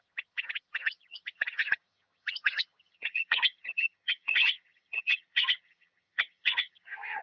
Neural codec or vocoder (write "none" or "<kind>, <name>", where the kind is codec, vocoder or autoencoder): vocoder, HiFi-GAN